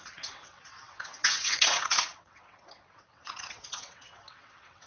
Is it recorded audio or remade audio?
remade